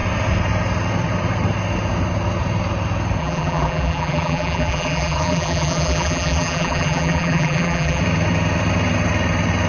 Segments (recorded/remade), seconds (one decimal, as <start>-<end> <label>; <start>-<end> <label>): 0.0-3.2 recorded; 3.2-8.0 remade; 8.0-9.7 recorded